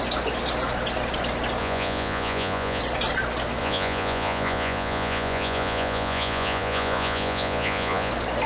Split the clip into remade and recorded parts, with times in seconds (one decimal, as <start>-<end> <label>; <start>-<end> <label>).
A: 0.0-1.6 recorded; 1.6-2.8 remade; 2.8-3.6 recorded; 3.6-8.1 remade; 8.1-8.5 recorded